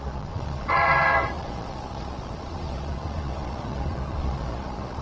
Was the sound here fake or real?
fake